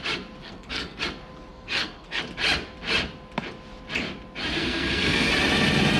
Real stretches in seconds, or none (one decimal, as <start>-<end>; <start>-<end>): 0.0-0.4; 1.0-1.5; 2.2-4.6; 5.3-6.0